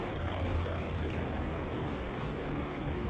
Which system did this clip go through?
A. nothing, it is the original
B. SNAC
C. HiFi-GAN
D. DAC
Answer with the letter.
D